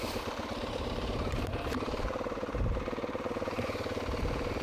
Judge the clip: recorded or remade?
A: remade